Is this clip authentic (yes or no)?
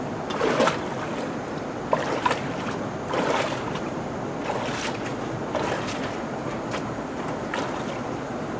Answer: no